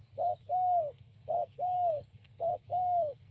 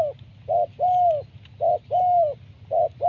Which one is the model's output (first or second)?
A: first